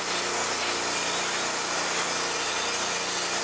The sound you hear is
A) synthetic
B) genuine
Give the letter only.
B